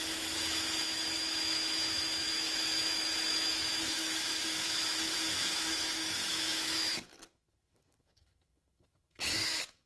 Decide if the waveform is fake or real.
fake